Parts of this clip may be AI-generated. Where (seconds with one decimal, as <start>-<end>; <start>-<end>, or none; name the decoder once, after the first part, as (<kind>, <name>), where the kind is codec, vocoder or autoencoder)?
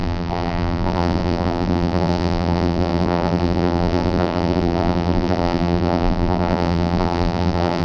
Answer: 0.0-7.8 (vocoder, BigVGAN v2)